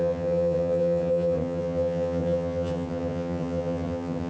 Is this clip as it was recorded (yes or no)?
no